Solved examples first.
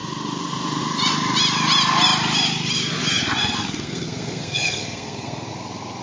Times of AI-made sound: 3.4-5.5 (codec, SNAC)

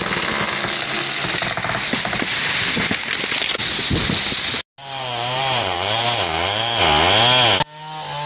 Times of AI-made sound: 4.8-6.8 (vocoder, BigVGAN v2)

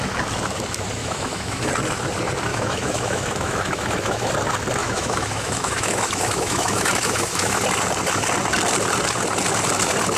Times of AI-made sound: 1.0-1.7 (autoencoder, DAC-VAE); 2.5-4.3; 4.8-7.6

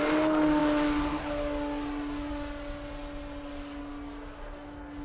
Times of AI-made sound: none

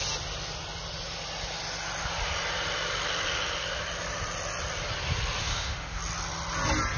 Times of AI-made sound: 5.4-6.0 (autoencoder, DAC-VAE)

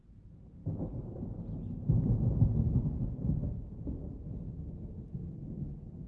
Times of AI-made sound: 0.0-0.6 (autoencoder, DAC-VAE); 4.3-6.1

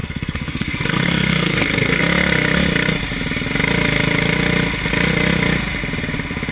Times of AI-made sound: 0.0-2.0 (codec, SNAC)